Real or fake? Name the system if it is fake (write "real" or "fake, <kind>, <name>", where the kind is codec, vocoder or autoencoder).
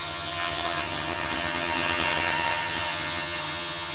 fake, vocoder, HiFi-GAN